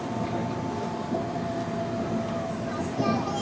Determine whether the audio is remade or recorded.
recorded